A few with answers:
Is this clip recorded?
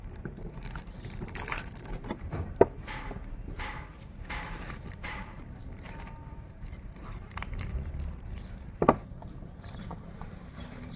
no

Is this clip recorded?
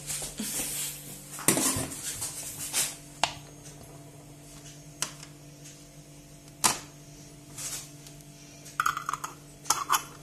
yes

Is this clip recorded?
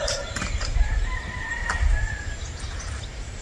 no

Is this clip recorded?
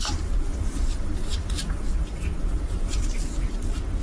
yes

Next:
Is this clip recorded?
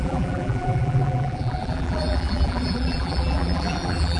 no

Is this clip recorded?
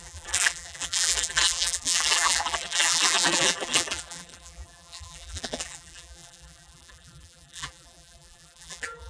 no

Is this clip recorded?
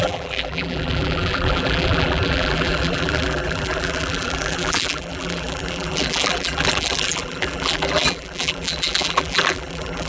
no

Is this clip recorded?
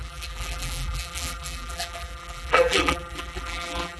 no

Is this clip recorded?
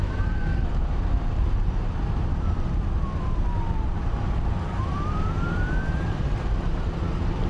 no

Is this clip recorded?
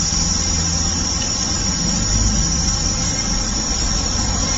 yes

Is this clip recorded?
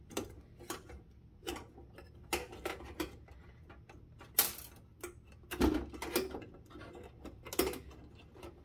yes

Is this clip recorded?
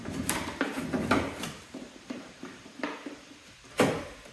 no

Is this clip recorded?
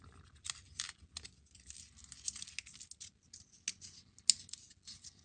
yes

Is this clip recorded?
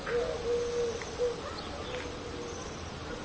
yes